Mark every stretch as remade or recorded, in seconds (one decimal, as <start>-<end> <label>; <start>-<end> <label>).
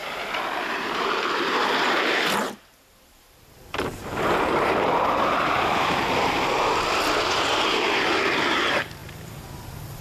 0.0-9.0 remade; 9.0-10.0 recorded